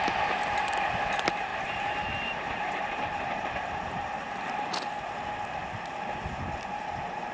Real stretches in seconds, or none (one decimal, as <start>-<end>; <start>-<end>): 0.0-1.5; 4.3-7.3